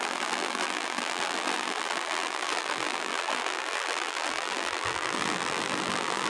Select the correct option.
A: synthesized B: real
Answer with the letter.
A